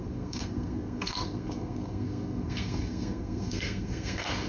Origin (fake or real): fake